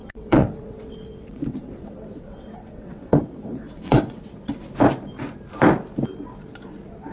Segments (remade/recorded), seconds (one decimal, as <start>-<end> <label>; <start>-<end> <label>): 0.0-4.3 remade; 4.3-7.1 recorded

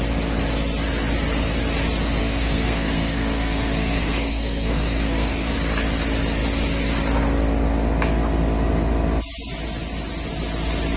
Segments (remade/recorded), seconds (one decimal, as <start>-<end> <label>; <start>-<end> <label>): 0.0-2.2 recorded; 2.2-5.5 remade; 5.5-11.0 recorded

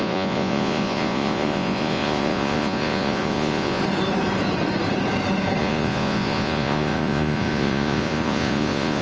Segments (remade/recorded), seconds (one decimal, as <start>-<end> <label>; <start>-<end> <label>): 0.0-3.8 remade; 3.8-5.6 recorded; 5.6-9.0 remade

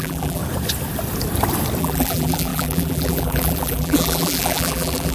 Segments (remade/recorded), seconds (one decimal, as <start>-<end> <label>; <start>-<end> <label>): 0.0-0.4 remade; 0.4-1.8 recorded; 1.8-5.1 remade

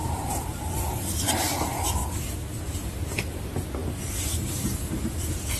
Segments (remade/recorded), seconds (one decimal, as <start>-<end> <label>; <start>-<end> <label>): 0.0-5.6 remade

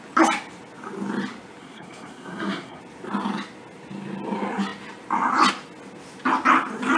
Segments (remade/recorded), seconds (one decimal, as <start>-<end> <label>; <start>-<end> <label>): 0.0-1.6 recorded; 1.6-2.8 remade; 2.8-7.0 recorded